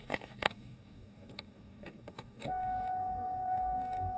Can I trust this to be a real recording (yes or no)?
no